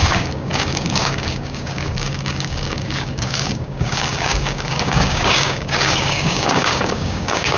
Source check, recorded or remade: remade